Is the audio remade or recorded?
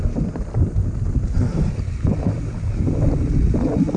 recorded